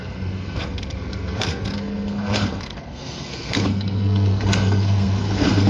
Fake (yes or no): yes